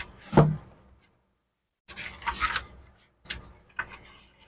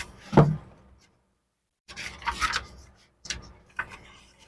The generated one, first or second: second